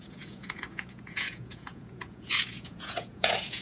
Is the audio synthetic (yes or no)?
yes